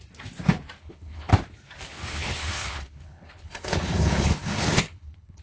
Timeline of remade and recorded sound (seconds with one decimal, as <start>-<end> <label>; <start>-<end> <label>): 0.0-0.8 recorded; 0.8-1.3 remade; 1.3-1.9 recorded; 1.9-5.4 remade